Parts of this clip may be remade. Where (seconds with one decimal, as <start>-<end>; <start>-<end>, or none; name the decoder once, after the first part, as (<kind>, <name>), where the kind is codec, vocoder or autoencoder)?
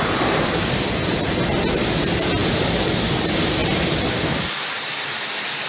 none